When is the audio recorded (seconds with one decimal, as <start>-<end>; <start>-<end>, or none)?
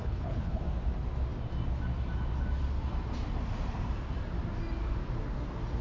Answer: 0.6-5.8